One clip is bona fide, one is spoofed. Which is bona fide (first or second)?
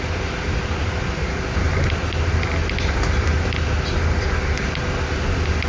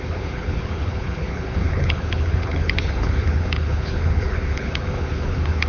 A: first